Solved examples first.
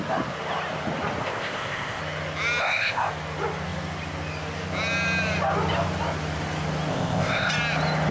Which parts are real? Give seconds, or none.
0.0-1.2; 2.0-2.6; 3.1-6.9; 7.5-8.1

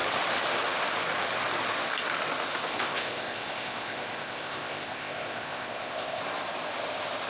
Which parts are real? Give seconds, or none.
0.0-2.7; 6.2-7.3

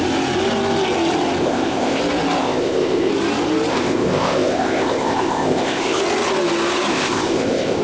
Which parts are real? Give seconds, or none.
0.0-1.4; 2.0-2.4; 3.1-3.7; 6.0-6.9